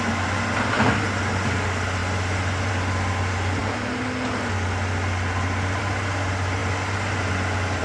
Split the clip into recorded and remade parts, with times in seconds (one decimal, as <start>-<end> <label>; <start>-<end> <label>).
0.0-7.8 recorded